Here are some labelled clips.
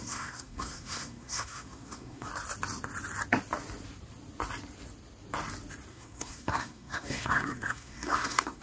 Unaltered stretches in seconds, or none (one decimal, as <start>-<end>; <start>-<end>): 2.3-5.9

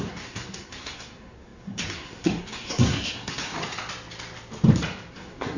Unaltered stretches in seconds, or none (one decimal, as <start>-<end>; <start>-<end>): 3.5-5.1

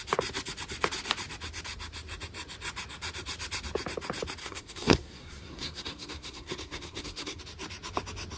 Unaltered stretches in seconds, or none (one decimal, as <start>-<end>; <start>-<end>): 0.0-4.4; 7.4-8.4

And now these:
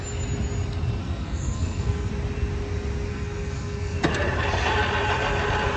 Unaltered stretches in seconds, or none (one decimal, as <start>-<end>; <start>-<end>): 0.0-1.0; 2.1-3.1; 4.0-5.8

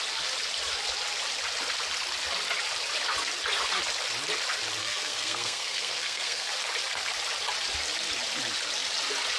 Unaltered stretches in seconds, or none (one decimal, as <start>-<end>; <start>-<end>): 0.0-4.8; 6.5-9.4

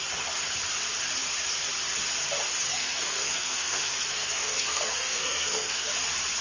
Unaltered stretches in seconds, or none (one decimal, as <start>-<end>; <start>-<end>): 0.0-2.7; 5.9-6.4

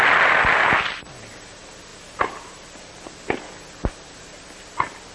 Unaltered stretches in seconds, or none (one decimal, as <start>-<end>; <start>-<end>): 0.0-5.1